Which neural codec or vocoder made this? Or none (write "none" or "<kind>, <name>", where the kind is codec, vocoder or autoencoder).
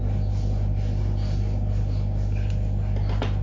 none